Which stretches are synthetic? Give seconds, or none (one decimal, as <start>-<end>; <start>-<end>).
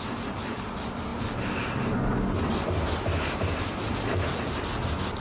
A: none